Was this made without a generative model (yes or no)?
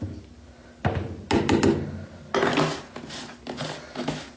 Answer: yes